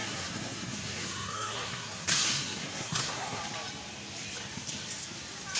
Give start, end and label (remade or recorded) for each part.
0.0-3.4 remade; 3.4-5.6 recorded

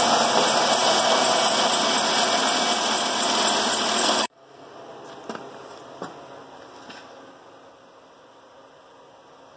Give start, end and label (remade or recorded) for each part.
0.0-4.0 recorded; 4.0-4.7 remade; 4.7-9.6 recorded